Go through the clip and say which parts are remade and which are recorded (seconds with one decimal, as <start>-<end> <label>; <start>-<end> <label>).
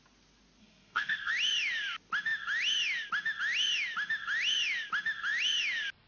0.0-0.6 recorded; 0.6-1.3 remade; 1.3-6.1 recorded